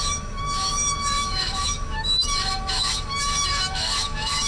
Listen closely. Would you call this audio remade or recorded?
remade